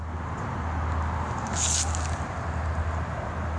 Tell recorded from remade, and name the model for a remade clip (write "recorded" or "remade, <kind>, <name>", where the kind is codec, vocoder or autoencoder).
recorded